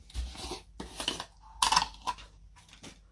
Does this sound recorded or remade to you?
recorded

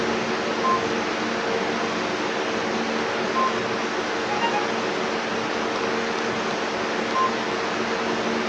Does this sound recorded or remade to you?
recorded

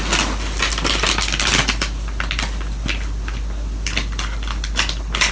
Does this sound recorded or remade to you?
recorded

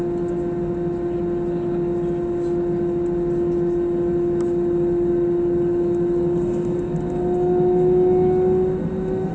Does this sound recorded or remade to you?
recorded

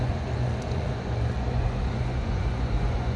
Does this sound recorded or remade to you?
remade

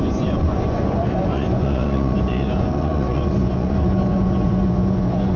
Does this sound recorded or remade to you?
remade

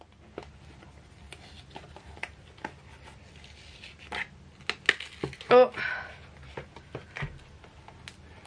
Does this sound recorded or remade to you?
recorded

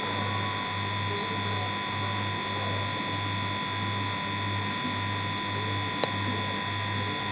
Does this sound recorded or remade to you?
recorded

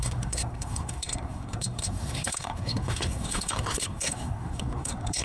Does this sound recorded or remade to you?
remade